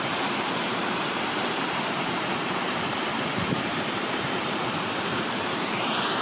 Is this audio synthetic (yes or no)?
yes